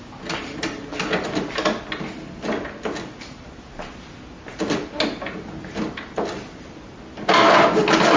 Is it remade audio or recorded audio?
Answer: recorded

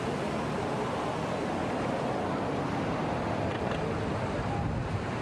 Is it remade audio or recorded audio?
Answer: recorded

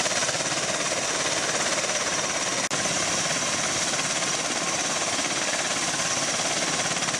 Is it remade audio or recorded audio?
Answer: recorded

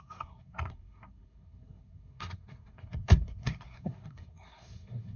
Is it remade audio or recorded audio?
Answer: remade